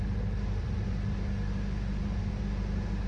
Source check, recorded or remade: recorded